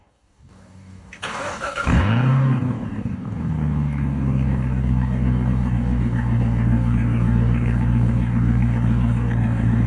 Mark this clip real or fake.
fake